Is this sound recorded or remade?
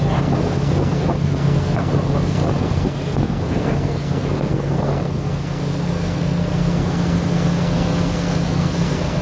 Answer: remade